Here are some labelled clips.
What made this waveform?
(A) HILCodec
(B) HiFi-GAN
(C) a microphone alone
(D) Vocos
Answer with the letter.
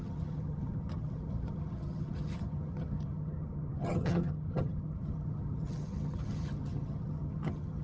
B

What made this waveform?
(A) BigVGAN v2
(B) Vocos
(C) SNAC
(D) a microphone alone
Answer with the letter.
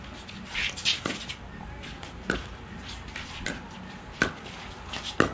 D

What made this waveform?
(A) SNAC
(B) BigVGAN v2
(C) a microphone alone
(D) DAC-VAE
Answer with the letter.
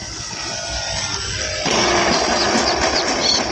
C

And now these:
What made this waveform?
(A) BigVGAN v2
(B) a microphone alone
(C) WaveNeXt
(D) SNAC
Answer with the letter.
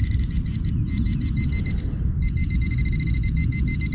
B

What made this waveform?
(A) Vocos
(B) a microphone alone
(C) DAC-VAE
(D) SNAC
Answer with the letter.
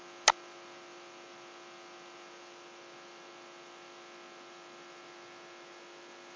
B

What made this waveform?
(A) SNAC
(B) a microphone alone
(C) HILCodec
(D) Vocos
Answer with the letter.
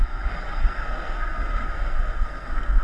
A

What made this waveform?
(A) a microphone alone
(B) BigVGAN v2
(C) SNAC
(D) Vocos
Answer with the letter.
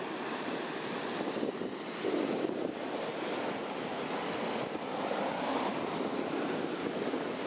A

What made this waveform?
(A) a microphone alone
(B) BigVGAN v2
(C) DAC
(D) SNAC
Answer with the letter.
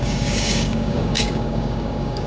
C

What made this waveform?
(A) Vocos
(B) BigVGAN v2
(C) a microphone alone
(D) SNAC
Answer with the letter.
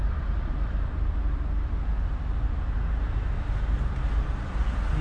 C